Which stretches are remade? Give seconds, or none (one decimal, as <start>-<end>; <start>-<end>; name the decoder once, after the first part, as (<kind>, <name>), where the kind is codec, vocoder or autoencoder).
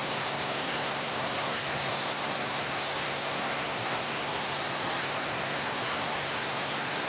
0.0-7.1 (codec, SNAC)